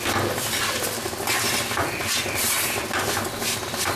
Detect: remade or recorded recorded